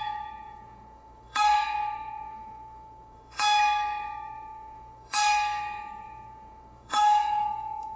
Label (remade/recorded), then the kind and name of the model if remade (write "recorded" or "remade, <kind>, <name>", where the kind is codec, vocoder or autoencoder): remade, autoencoder, DAC-VAE